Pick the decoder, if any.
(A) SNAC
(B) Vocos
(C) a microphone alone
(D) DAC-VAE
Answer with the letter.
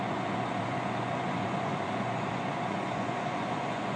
B